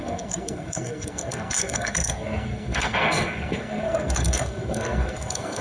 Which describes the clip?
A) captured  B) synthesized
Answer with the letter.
B